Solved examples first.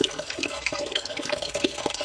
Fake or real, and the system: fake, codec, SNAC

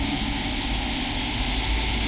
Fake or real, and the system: real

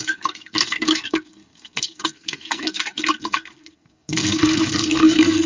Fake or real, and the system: fake, codec, SNAC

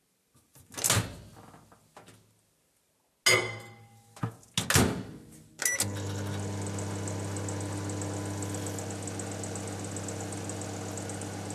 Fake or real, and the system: real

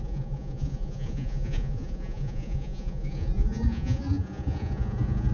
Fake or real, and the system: fake, vocoder, Vocos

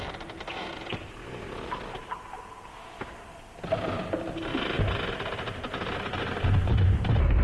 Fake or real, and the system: real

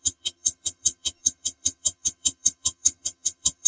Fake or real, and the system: fake, vocoder, HiFi-GAN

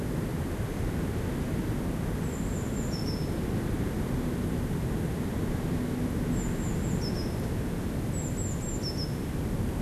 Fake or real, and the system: real